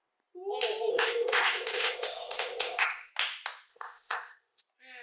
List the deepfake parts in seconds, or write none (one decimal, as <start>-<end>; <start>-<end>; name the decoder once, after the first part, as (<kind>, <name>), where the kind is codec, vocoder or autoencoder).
0.9-3.1 (codec, ZipCodec); 3.7-4.6